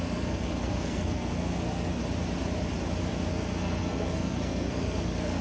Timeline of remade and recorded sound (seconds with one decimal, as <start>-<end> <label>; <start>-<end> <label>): 0.0-2.0 remade; 2.0-3.3 recorded; 3.3-5.4 remade